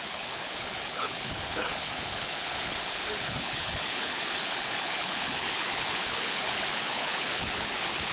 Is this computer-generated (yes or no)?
yes